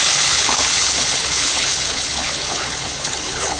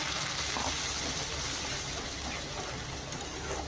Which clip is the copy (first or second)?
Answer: first